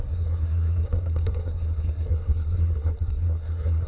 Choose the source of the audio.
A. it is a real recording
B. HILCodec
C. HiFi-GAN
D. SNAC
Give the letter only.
D